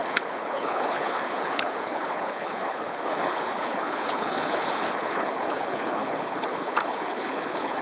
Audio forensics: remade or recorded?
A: remade